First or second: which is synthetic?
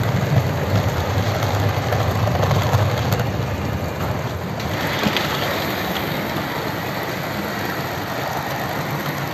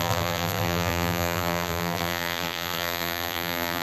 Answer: second